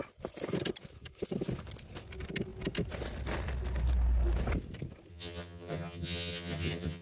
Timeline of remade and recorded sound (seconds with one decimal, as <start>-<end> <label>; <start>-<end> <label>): 0.0-5.1 recorded; 5.1-7.0 remade